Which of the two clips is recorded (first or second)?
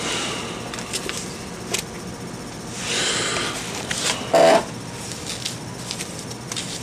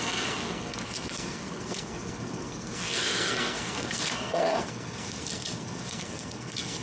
first